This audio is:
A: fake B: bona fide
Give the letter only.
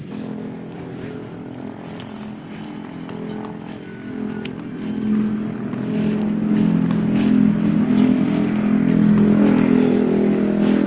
B